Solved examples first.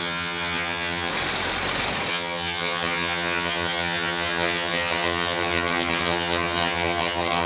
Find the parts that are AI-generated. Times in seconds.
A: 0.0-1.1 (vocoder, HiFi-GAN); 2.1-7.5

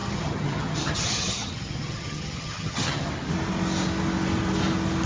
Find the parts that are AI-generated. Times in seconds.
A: 0.0-3.1 (vocoder, HiFi-GAN)

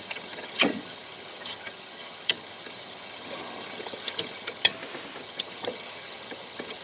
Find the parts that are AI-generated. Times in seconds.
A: 0.0-4.7 (vocoder, HiFi-GAN); 5.2-6.8

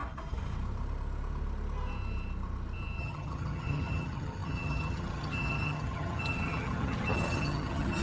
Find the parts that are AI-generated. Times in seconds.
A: 3.0-8.0 (vocoder, HiFi-GAN)

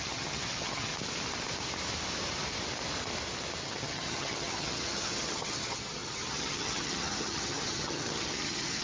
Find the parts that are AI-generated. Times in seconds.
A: 0.0-0.9 (vocoder, HiFi-GAN); 3.6-8.8